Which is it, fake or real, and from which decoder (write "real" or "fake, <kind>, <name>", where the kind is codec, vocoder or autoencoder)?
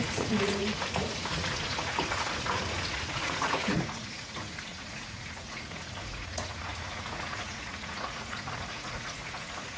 fake, vocoder, Vocos